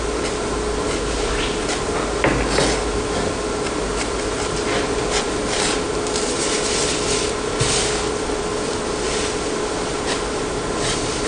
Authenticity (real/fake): real